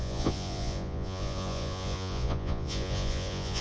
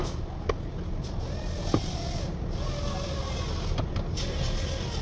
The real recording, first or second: second